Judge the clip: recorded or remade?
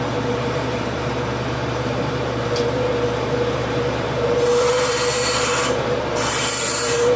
remade